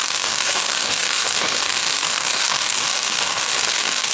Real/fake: fake